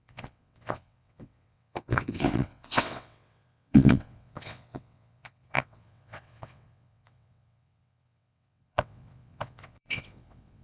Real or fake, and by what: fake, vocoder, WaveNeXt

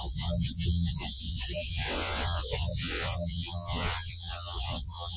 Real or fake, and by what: fake, vocoder, WaveNeXt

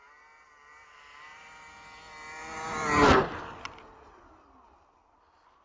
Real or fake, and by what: real